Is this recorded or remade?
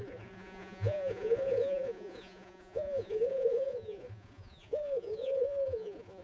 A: remade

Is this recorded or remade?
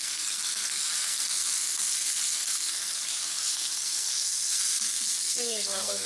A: remade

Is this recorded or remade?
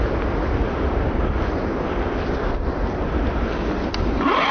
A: recorded